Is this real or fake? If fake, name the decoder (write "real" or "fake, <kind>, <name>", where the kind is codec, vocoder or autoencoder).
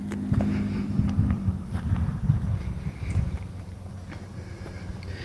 fake, vocoder, BigVGAN v2